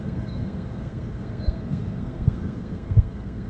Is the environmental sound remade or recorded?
remade